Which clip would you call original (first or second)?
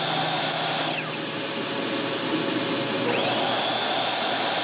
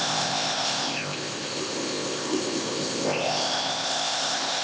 first